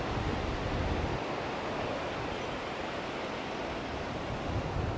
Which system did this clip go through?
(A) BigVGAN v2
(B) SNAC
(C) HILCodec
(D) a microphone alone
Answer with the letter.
D